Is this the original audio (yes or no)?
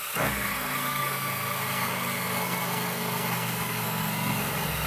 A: no